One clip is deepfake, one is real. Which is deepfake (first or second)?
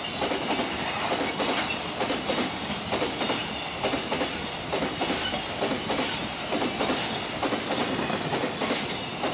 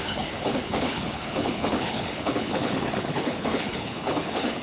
second